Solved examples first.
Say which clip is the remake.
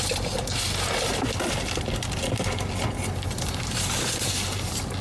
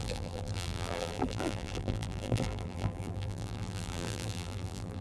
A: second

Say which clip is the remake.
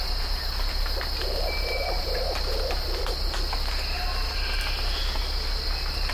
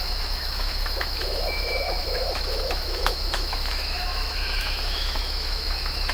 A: second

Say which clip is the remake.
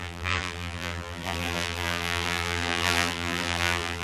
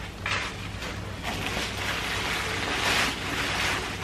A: first